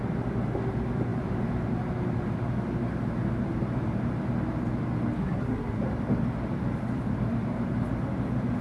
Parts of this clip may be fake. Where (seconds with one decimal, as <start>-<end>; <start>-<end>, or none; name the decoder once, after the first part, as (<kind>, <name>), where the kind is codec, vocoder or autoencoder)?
5.2-5.8 (codec, SNAC)